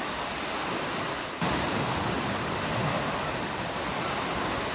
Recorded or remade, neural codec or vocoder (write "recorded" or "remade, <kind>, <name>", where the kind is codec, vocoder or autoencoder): recorded